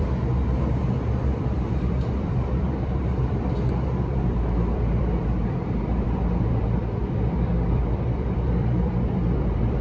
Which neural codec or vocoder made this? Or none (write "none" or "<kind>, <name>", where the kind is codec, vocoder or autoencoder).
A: vocoder, BigVGAN v2